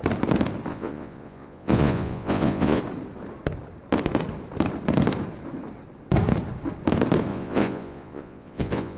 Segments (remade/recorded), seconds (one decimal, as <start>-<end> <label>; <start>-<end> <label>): 0.0-0.7 recorded; 0.7-2.8 remade; 2.8-7.3 recorded; 7.3-9.0 remade